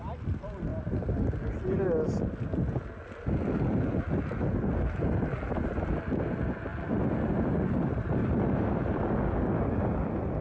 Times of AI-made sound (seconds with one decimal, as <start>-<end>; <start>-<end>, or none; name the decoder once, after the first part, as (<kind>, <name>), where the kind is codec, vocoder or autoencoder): 8.2-9.0 (vocoder, BigVGAN v2)